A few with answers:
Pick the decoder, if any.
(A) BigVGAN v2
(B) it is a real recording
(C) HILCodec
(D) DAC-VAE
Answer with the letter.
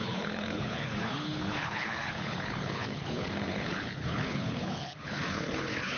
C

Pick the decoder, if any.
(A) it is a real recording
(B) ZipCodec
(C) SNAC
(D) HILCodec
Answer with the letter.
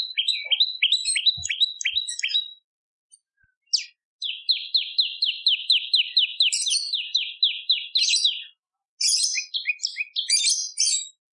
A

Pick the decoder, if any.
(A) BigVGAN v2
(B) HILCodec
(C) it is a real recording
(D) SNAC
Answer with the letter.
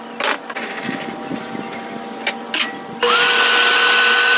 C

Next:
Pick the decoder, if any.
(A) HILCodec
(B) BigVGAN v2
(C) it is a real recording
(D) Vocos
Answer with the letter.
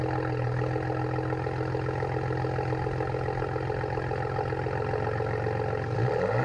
C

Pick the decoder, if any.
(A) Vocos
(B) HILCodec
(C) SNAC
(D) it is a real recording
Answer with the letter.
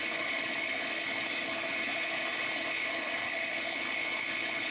B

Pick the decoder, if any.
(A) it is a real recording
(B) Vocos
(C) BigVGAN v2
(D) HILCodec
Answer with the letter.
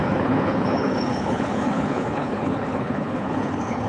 D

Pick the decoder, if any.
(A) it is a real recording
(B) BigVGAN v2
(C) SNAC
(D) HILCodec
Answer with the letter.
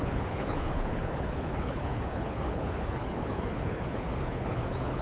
D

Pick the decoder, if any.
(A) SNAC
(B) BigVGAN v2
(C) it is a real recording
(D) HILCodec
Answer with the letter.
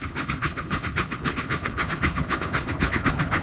D